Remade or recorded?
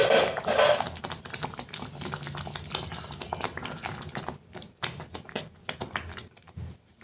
recorded